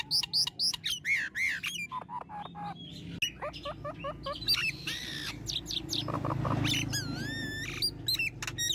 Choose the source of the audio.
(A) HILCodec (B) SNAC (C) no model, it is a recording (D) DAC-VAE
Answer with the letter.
C